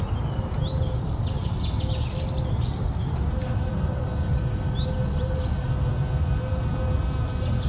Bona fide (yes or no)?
yes